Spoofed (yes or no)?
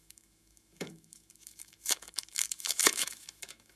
yes